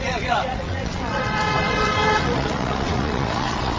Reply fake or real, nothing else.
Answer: fake